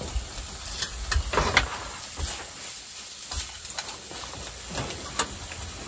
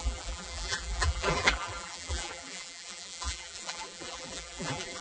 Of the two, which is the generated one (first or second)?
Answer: second